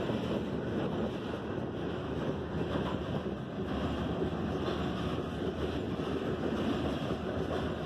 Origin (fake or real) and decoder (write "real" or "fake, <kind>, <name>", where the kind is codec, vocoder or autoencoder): real